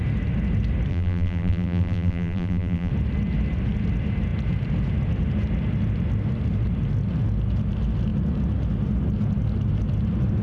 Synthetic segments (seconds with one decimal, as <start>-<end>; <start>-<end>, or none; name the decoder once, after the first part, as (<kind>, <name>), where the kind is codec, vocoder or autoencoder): 0.9-2.9 (vocoder, BigVGAN v2)